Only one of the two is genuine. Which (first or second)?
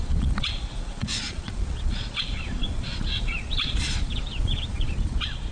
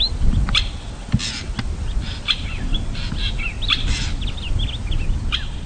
second